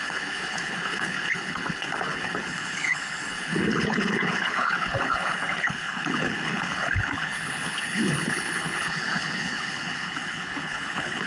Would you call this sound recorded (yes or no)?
no